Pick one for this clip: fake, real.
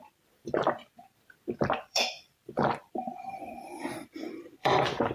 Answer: fake